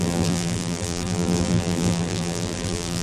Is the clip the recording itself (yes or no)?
no